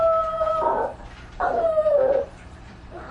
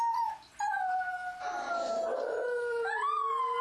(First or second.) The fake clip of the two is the first